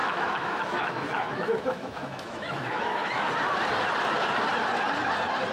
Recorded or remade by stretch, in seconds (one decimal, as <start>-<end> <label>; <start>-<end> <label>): 0.0-3.3 remade; 3.3-5.5 recorded

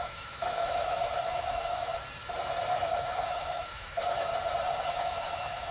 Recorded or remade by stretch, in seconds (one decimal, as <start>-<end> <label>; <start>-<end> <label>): 0.0-1.9 remade; 1.9-2.7 recorded; 2.7-4.3 remade; 4.3-4.8 recorded; 4.8-5.7 remade

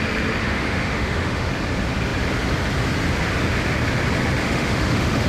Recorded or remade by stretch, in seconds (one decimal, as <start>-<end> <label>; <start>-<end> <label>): 0.0-0.4 recorded; 0.4-1.5 remade; 1.5-4.4 recorded; 4.4-5.3 remade

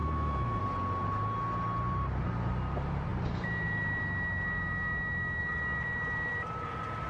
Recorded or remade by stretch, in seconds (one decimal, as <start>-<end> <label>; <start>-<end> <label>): 0.0-0.6 remade; 0.6-7.1 recorded

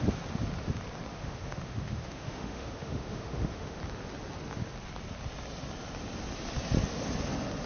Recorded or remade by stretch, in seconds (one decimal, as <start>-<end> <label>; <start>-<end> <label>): 0.0-1.1 recorded; 1.1-3.8 remade; 3.8-7.7 recorded

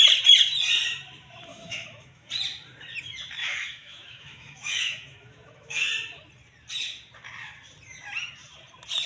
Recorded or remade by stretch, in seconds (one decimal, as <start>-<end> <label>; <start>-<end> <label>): 0.0-1.5 recorded; 1.5-2.3 remade; 2.3-3.4 recorded; 3.4-5.9 remade; 5.9-9.1 recorded